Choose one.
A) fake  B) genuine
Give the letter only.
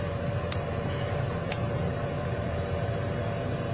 A